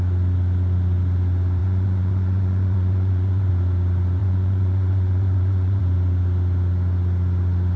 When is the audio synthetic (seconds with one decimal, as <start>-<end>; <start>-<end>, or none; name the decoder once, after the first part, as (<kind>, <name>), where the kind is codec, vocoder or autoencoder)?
1.6-3.5 (vocoder, Vocos); 4.2-5.8

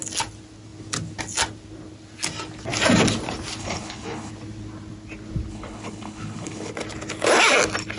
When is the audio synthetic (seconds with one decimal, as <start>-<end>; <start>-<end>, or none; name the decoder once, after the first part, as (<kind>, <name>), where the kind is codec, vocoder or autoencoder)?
3.6-4.3 (codec, HILCodec); 5.5-6.7